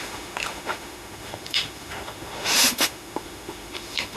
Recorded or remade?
remade